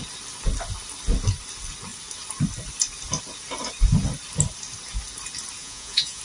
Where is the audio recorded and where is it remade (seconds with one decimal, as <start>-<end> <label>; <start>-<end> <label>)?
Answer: 0.0-5.6 recorded; 5.6-6.2 remade